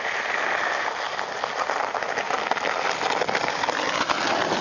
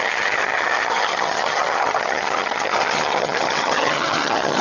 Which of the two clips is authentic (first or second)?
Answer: first